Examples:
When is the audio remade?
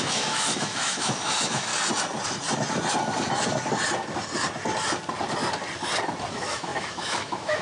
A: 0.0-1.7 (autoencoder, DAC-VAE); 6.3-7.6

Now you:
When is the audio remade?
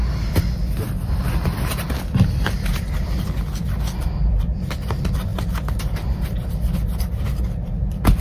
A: 5.3-6.5 (vocoder, BigVGAN v2)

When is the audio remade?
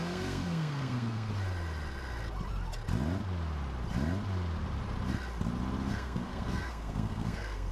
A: 0.0-1.3 (codec, SNAC); 5.9-7.7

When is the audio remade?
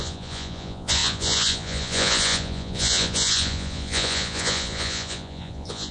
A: 0.0-5.9 (vocoder, Vocos)